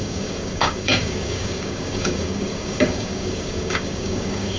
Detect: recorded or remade remade